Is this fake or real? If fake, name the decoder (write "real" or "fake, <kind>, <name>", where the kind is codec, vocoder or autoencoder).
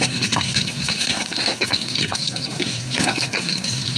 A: fake, codec, SNAC